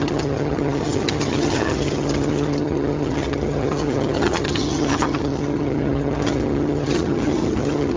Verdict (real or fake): fake